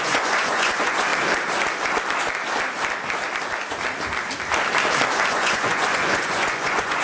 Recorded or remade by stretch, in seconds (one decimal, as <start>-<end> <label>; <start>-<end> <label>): 0.0-1.1 remade; 1.1-5.3 recorded; 5.3-7.0 remade

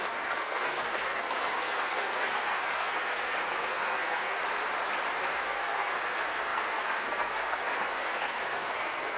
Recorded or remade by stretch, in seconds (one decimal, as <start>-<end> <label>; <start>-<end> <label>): 0.0-4.4 remade; 4.4-5.2 recorded; 5.2-9.2 remade

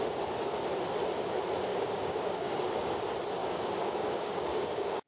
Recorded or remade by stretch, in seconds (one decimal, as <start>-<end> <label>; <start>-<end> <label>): 0.0-1.7 recorded; 1.7-3.0 remade; 3.0-3.4 recorded; 3.4-5.1 remade

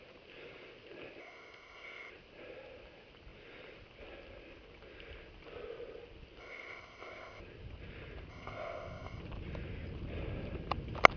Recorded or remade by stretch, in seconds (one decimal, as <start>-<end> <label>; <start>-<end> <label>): 0.0-1.2 recorded; 1.2-2.1 remade; 2.1-6.4 recorded; 6.4-7.4 remade; 7.4-8.3 recorded; 8.3-9.2 remade; 9.2-11.2 recorded

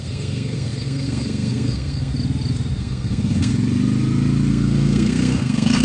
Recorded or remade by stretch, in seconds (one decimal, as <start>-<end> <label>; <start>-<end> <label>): 0.0-2.1 remade; 2.1-2.8 recorded; 2.8-3.5 remade; 3.5-4.5 recorded; 4.5-5.8 remade

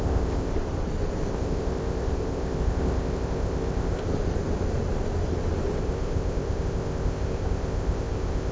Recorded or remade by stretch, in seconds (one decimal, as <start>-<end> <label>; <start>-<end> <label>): 0.0-0.5 remade; 0.5-1.3 recorded; 1.3-4.1 remade; 4.1-5.8 recorded; 5.8-8.5 remade

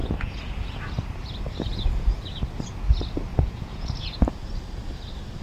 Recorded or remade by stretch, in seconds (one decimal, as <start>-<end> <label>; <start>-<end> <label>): 0.0-0.8 remade; 0.8-1.7 recorded; 1.7-2.2 remade; 2.2-3.3 recorded; 3.3-4.2 remade; 4.2-5.4 recorded

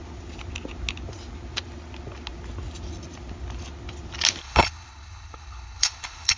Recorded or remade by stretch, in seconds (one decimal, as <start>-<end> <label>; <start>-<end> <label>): 0.0-4.4 recorded; 4.4-6.4 remade